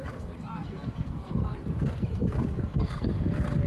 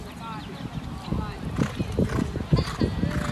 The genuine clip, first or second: second